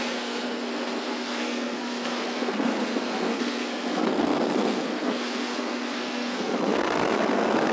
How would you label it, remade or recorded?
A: remade